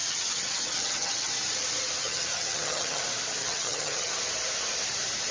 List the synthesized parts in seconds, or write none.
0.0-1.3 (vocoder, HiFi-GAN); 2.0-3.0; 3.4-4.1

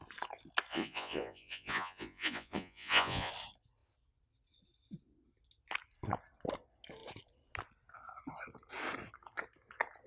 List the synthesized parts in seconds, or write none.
0.7-3.3 (vocoder, Vocos)

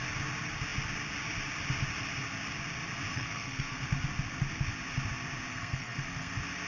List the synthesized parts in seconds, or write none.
3.1-3.8 (codec, SNAC); 5.5-6.3

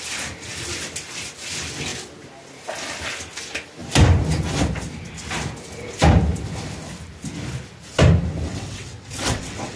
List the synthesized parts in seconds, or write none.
8.5-9.8 (vocoder, WaveNeXt)